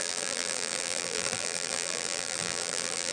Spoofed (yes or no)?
yes